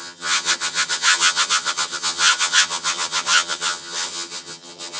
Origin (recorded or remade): remade